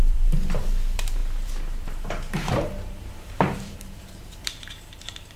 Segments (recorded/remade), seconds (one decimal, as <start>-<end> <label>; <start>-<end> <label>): 0.0-5.4 remade